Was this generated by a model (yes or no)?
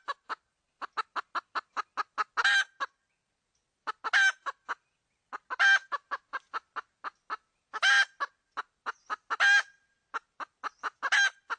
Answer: no